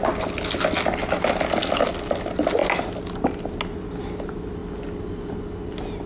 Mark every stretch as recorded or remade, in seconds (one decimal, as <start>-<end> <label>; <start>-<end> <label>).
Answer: 0.0-6.1 recorded